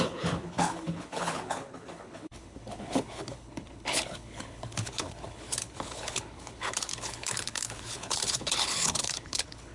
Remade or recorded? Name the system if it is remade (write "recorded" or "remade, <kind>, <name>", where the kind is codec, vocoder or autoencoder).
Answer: remade, codec, HILCodec